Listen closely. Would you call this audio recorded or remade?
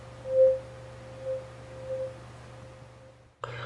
recorded